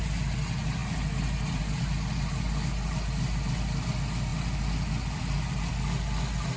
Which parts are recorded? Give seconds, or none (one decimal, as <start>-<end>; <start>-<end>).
0.0-6.6